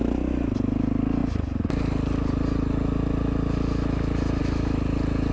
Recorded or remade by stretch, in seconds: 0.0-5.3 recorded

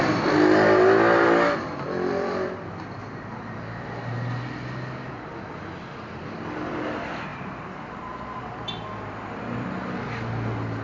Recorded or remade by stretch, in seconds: 0.0-3.0 recorded; 3.0-3.6 remade; 3.6-10.8 recorded